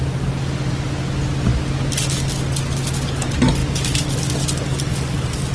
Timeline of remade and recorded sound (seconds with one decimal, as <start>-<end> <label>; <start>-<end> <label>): 0.0-5.5 recorded